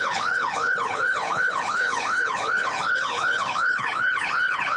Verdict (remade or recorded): remade